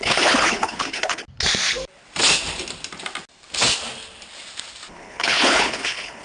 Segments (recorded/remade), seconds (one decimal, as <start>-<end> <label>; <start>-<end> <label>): 0.0-1.2 remade; 1.2-4.9 recorded; 4.9-6.2 remade